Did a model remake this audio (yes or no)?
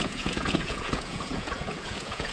yes